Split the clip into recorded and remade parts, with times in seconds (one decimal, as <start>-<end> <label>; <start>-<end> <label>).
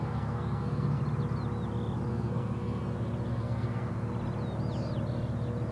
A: 0.0-1.0 remade; 1.0-2.1 recorded; 2.1-2.8 remade; 2.8-3.3 recorded; 3.3-3.9 remade; 3.9-5.7 recorded